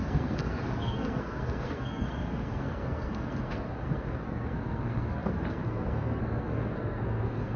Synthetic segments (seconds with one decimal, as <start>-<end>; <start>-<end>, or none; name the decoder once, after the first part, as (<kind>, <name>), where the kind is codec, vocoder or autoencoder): 0.0-7.6 (codec, SNAC)